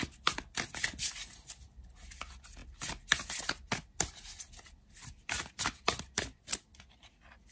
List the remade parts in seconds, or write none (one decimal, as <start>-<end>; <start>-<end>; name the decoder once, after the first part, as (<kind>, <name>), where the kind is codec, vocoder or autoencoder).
none